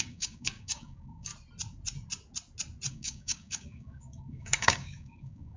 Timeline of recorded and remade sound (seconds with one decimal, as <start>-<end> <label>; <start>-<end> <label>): 0.0-1.3 remade; 1.3-2.9 recorded; 2.9-5.6 remade